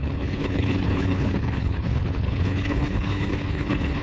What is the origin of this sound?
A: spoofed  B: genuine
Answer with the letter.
A